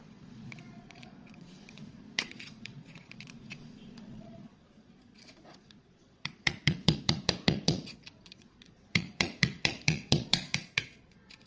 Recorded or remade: remade